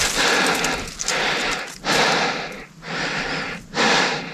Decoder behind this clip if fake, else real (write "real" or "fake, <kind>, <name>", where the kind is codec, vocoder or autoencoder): real